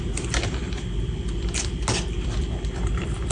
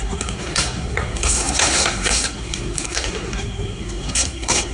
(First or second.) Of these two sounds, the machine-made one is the second